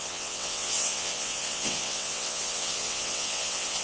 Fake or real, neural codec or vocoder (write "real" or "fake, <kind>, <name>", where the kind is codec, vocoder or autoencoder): fake, vocoder, WaveNeXt